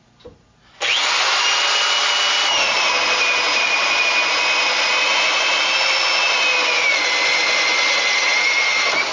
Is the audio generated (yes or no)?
no